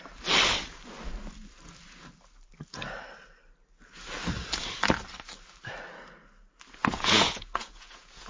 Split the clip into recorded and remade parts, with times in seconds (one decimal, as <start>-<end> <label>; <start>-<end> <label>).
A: 0.0-6.8 recorded; 6.8-8.3 remade